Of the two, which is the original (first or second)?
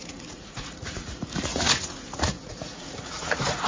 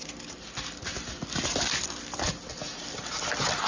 second